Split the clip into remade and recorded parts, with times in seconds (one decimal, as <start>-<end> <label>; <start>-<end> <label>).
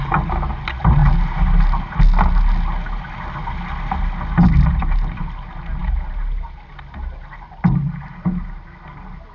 0.0-9.3 recorded